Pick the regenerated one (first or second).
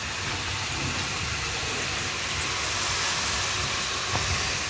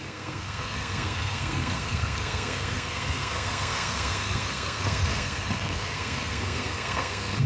second